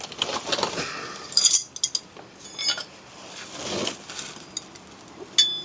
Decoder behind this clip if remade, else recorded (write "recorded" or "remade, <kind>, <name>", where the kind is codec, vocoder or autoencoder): recorded